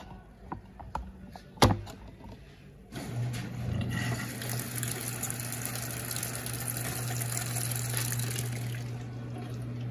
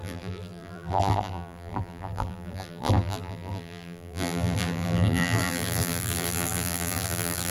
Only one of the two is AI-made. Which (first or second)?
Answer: second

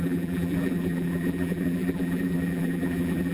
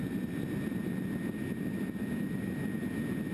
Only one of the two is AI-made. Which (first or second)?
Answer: first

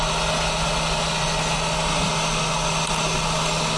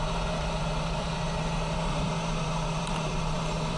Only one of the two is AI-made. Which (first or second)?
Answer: second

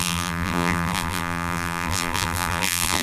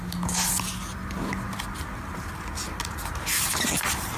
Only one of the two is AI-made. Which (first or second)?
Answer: first